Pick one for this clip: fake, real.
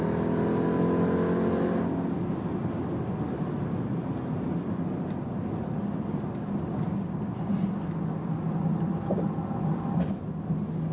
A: real